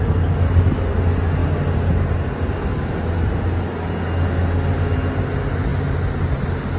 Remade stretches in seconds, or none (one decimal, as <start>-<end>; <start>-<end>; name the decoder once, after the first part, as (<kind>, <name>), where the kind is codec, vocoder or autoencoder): none